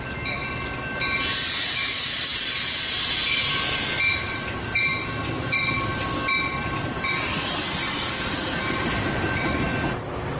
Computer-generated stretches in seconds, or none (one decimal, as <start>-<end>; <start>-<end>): none